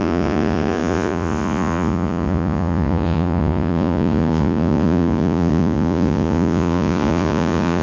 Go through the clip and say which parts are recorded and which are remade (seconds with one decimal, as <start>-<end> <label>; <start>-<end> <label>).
0.0-7.8 remade